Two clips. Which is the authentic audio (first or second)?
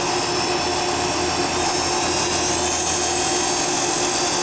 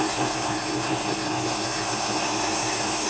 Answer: first